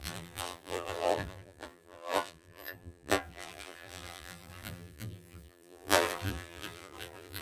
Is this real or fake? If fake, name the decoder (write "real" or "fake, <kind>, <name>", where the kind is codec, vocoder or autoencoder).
fake, vocoder, BigVGAN v2